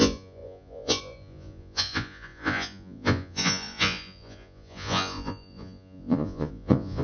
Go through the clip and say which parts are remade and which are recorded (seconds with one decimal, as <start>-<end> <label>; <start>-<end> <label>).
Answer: 0.0-7.0 remade